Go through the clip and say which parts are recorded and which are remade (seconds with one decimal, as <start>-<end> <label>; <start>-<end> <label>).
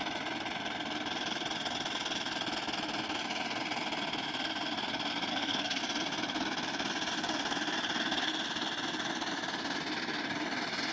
0.0-5.3 recorded; 5.3-5.8 remade; 5.8-10.9 recorded